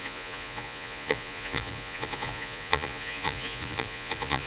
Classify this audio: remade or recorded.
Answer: remade